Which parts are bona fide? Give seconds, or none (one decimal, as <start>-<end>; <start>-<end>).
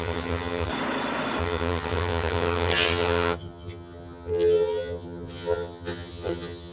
0.7-1.4